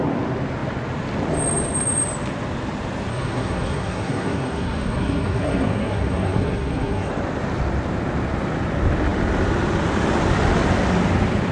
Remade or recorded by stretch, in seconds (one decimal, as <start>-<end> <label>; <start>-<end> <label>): 0.0-3.1 recorded; 3.1-7.1 remade; 7.1-11.5 recorded